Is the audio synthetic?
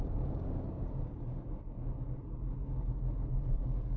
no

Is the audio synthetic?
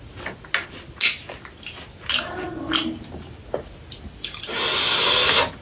no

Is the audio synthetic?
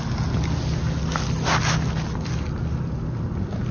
no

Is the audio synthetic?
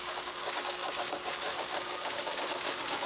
yes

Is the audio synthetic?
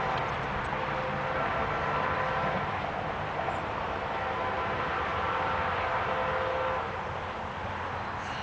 no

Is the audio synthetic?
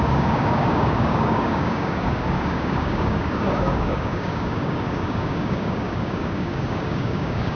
yes